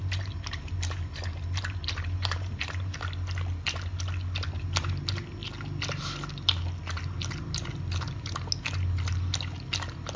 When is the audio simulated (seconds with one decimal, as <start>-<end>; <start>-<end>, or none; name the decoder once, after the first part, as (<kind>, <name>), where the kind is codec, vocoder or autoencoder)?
0.0-2.9 (vocoder, BigVGAN v2)

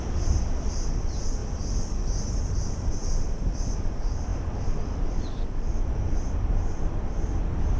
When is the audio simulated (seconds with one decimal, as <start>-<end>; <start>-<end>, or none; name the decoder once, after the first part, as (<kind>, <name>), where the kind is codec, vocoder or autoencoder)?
0.0-1.4 (vocoder, BigVGAN v2); 2.3-7.8